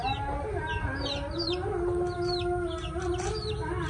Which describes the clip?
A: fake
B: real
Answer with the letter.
B